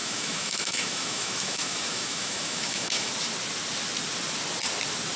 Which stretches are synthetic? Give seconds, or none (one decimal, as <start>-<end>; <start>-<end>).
0.0-3.1